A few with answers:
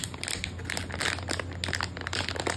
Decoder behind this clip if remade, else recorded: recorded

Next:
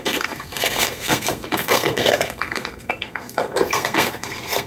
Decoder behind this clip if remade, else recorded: remade, codec, SNAC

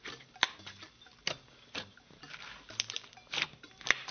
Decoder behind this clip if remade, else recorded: recorded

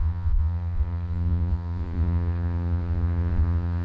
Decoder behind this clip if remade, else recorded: remade, vocoder, Vocos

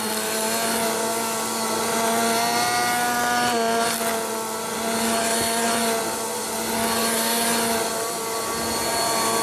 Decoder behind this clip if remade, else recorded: recorded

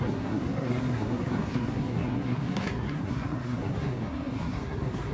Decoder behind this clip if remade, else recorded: remade, codec, SNAC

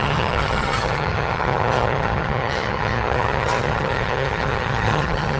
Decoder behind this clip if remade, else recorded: remade, vocoder, HiFi-GAN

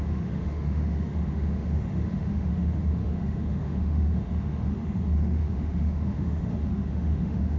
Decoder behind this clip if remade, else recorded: remade, autoencoder, DAC-VAE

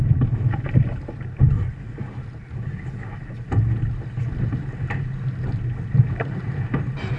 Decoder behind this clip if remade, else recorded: recorded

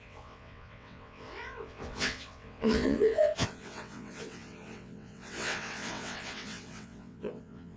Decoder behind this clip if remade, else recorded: remade, vocoder, WaveNeXt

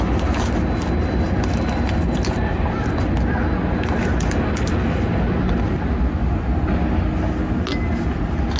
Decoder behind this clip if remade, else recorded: recorded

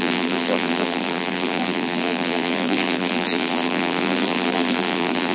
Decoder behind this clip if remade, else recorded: remade, vocoder, BigVGAN v2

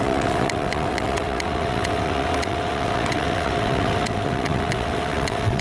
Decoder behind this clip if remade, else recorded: remade, vocoder, WaveNeXt